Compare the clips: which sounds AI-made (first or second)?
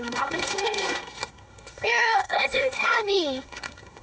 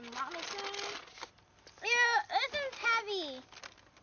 first